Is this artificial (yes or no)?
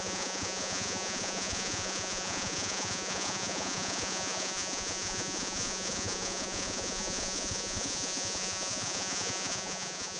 yes